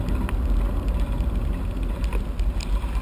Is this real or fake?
real